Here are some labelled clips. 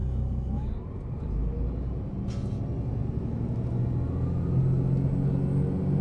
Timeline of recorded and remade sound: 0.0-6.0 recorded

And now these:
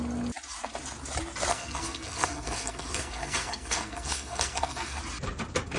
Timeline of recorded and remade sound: 0.0-1.5 recorded; 1.5-5.0 remade; 5.0-5.8 recorded

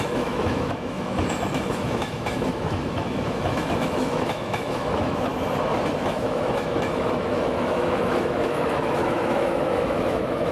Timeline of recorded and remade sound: 0.0-5.3 remade; 5.3-6.0 recorded; 6.0-10.5 remade